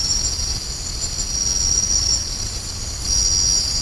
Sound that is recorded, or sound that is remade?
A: recorded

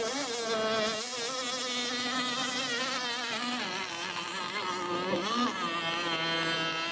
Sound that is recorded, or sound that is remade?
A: recorded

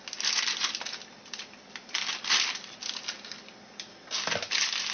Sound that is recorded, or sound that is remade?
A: recorded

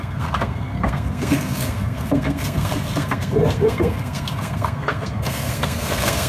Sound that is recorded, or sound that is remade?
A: remade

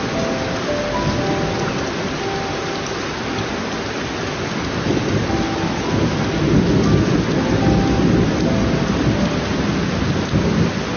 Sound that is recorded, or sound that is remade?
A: recorded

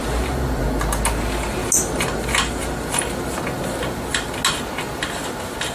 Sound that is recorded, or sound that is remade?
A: recorded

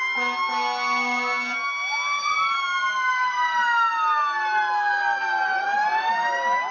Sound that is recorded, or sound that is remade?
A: recorded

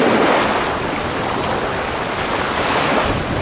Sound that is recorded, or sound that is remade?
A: recorded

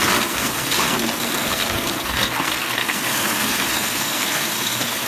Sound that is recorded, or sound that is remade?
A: remade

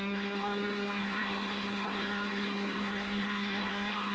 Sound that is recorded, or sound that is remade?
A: remade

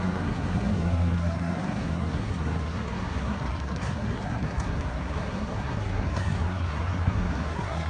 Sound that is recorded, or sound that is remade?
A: remade